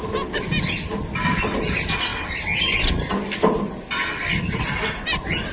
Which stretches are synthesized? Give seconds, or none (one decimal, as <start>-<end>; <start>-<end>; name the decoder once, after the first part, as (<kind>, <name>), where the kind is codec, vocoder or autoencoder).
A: none

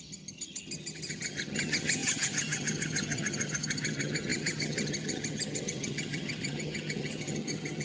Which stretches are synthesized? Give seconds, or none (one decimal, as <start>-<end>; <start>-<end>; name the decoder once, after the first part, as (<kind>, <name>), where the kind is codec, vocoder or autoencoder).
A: 0.0-7.8 (vocoder, HiFi-GAN)

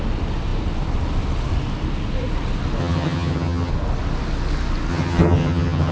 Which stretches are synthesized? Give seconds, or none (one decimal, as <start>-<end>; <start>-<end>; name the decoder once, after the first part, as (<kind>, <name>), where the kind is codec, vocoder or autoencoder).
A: 2.8-3.7 (vocoder, HiFi-GAN); 4.9-5.9

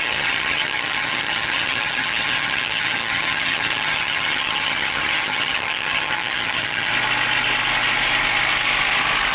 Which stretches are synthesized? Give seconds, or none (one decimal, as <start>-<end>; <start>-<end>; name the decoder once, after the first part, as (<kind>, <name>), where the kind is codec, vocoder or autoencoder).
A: 0.0-6.9 (vocoder, HiFi-GAN)

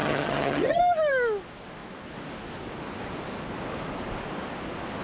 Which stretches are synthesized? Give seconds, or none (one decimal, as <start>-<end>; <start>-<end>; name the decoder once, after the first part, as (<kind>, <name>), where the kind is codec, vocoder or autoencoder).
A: 0.0-0.8 (vocoder, HiFi-GAN)

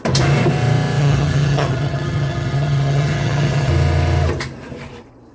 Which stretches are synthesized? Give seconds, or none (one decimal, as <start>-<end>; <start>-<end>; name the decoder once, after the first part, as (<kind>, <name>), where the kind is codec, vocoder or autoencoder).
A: 1.0-3.7 (vocoder, HiFi-GAN)

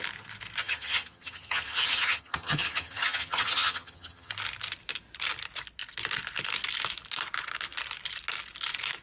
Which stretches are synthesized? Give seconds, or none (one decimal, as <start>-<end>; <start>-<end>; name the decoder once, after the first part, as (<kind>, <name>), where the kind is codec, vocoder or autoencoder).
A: 0.6-4.3 (vocoder, HiFi-GAN)